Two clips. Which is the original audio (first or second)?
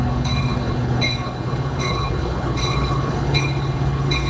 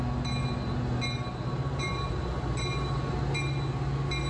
second